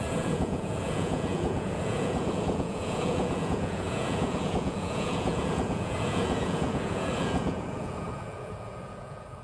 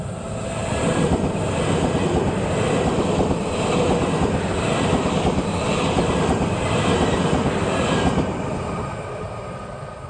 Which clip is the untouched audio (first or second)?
second